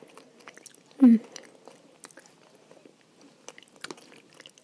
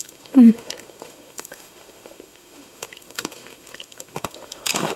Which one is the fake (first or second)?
second